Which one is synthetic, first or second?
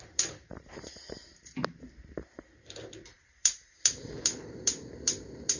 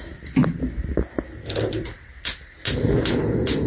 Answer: first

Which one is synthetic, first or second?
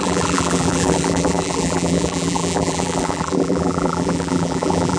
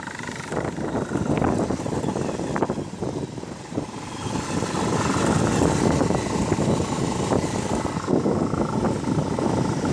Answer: first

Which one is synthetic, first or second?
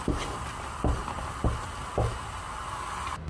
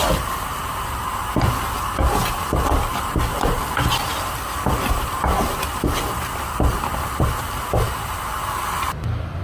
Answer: second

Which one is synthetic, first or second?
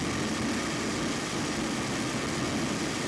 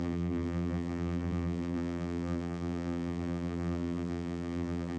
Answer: second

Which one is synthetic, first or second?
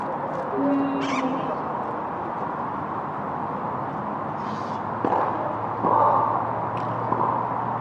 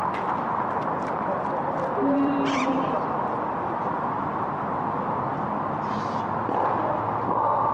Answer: second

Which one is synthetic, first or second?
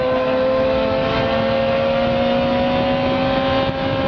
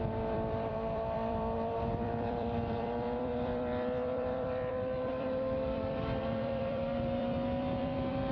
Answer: second